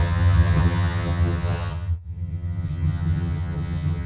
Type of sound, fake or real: fake